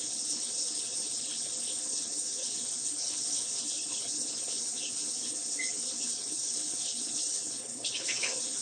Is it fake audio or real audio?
fake